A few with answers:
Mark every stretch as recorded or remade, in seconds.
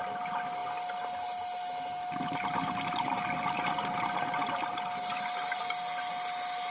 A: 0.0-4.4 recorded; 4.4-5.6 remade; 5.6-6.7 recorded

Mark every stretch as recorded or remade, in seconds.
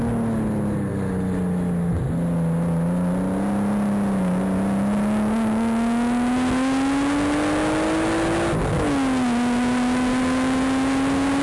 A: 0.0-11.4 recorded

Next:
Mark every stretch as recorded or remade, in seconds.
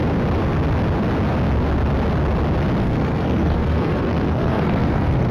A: 0.0-2.8 recorded; 2.8-5.3 remade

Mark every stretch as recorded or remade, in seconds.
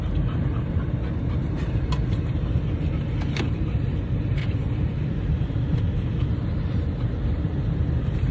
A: 0.0-4.4 recorded; 4.4-8.3 remade